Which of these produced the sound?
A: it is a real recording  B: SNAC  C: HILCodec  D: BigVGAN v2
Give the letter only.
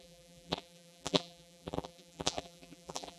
D